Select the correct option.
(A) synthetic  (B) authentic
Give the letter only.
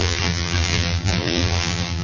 A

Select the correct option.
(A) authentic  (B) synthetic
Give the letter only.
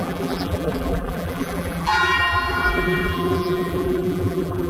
B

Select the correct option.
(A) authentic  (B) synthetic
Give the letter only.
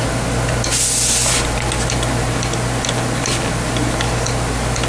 A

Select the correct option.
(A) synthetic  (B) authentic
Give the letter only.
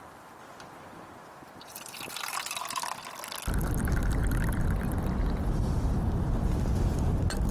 B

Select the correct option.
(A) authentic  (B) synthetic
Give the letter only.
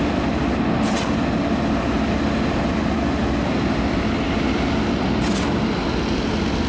A